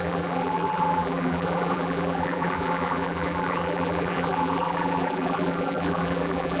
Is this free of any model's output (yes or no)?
no